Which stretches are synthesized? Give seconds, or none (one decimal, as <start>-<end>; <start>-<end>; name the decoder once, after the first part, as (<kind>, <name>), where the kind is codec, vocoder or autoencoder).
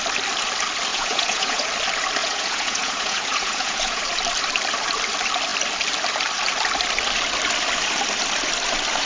0.9-1.7 (vocoder, Vocos); 2.2-4.0